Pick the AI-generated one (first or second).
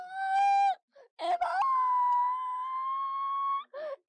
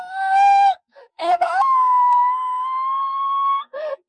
second